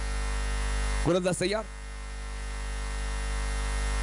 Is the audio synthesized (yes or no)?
no